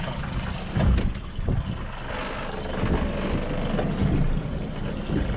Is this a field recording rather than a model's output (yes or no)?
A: yes